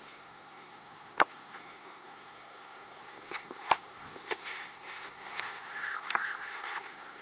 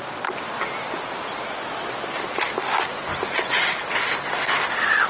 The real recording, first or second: second